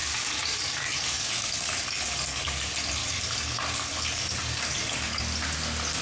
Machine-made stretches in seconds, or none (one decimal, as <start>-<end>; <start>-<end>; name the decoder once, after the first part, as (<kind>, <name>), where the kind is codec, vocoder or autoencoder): 0.0-2.5 (codec, DAC); 3.0-5.2